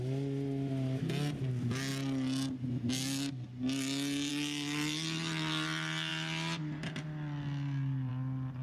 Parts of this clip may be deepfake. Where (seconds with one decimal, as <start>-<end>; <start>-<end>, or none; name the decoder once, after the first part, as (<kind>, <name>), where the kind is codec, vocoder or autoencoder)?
none